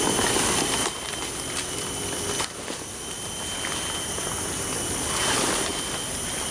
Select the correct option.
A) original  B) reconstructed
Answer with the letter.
A